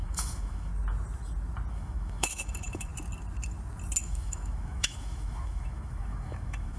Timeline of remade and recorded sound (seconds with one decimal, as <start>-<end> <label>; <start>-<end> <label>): 0.0-0.7 remade; 0.7-1.7 recorded; 1.7-2.9 remade; 2.9-4.0 recorded; 4.0-6.8 remade